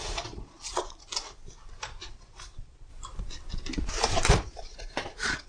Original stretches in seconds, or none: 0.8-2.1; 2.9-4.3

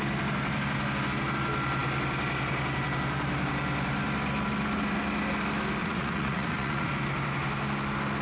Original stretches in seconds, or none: 0.0-5.8; 6.9-8.2

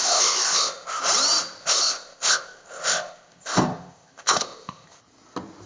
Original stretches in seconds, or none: 1.0-1.6; 5.0-5.7